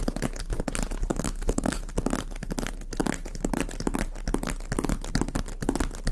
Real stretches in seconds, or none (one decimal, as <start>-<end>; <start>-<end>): 0.0-1.1; 1.8-6.1